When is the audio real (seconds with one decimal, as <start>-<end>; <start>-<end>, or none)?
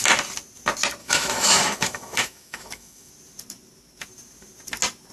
0.0-1.0; 3.1-5.1